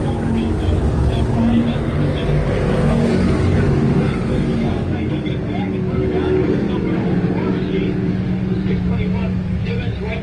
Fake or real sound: fake